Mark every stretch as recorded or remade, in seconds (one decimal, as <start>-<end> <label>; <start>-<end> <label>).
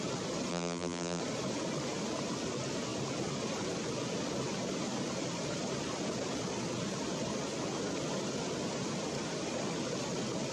0.0-0.5 recorded; 0.5-1.2 remade; 1.2-10.5 recorded